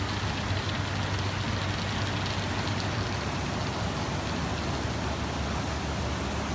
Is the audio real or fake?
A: real